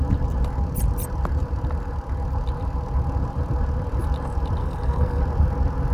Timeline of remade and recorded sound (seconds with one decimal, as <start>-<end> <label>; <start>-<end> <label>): 0.0-4.6 recorded; 4.6-5.2 remade; 5.2-5.9 recorded